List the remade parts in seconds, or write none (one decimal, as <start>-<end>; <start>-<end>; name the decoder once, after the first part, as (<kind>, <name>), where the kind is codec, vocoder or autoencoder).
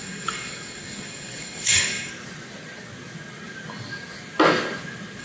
0.0-2.1 (codec, DAC)